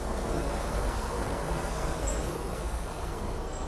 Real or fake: fake